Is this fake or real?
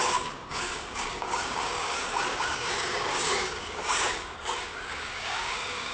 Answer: fake